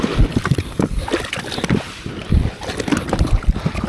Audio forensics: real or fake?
real